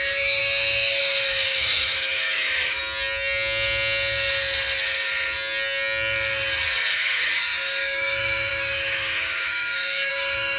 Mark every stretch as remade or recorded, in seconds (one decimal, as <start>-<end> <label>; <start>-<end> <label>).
0.0-2.8 remade; 2.8-6.9 recorded; 6.9-10.6 remade